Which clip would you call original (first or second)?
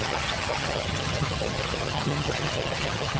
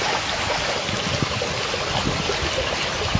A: second